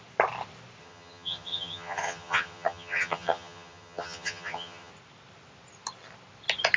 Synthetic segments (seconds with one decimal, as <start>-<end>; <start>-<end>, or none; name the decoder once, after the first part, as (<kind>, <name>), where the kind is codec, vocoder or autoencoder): 0.8-4.9 (vocoder, HiFi-GAN)